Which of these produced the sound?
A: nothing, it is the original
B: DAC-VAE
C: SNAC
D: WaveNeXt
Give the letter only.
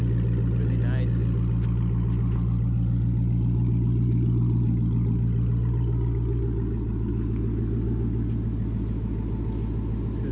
A